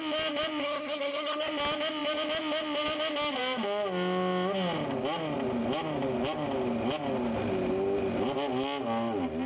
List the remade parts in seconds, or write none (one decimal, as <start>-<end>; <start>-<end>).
0.6-1.5